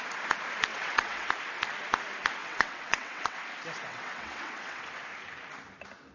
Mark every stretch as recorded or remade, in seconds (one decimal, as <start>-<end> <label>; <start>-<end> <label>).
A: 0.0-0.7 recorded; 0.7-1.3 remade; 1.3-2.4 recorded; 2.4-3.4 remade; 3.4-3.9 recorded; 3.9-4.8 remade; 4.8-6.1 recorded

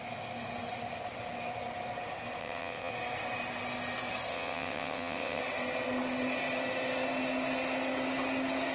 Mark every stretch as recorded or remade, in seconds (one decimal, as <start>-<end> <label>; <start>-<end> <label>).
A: 0.0-2.4 recorded; 2.4-2.9 remade; 2.9-4.3 recorded; 4.3-5.4 remade; 5.4-8.7 recorded

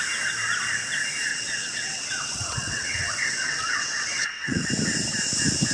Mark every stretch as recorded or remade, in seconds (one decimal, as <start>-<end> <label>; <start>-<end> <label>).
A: 0.0-1.3 recorded; 1.3-4.7 remade; 4.7-5.7 recorded

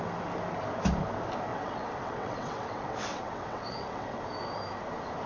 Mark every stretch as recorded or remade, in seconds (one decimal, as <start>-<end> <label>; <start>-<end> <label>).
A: 0.0-1.5 recorded; 1.5-4.2 remade; 4.2-5.3 recorded

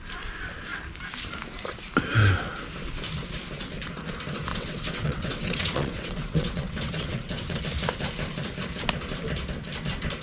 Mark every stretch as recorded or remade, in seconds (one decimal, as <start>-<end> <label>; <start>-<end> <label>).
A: 0.0-4.5 recorded; 4.5-7.6 remade; 7.6-10.2 recorded

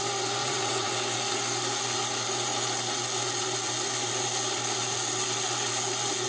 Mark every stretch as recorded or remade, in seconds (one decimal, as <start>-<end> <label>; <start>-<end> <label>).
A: 0.0-0.4 recorded; 0.4-0.9 remade; 0.9-6.3 recorded

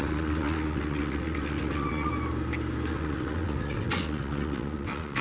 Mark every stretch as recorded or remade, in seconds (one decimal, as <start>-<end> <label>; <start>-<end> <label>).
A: 0.0-2.1 remade; 2.1-2.9 recorded; 2.9-5.2 remade